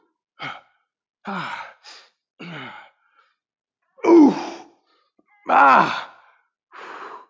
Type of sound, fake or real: real